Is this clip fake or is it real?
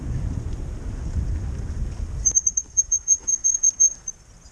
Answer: real